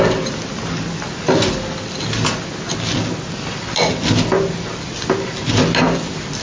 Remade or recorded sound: recorded